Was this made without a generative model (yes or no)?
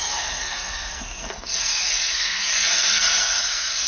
no